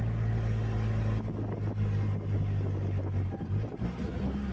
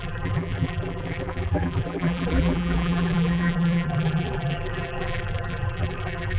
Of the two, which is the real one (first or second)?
first